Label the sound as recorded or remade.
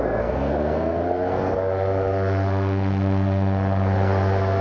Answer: remade